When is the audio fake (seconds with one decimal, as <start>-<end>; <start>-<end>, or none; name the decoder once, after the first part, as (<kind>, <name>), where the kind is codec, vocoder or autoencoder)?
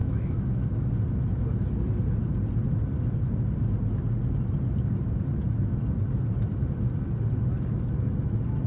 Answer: 0.0-0.9 (autoencoder, DAC-VAE)